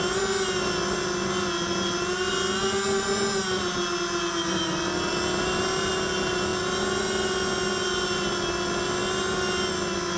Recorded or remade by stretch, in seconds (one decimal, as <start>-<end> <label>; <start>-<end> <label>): 0.0-10.2 recorded